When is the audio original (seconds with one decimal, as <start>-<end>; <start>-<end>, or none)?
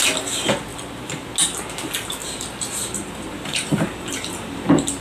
0.0-0.7; 1.3-2.2